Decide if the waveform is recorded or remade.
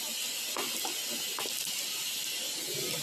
recorded